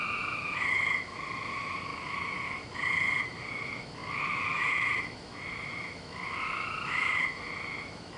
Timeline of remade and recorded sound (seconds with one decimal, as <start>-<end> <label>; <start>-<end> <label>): 0.0-8.2 remade